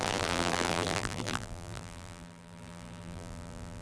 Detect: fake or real fake